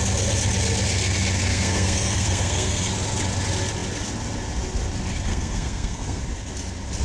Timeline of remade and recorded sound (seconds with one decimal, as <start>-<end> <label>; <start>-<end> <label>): 0.0-1.5 recorded; 1.5-2.9 remade; 2.9-5.3 recorded; 5.3-6.2 remade; 6.2-7.0 recorded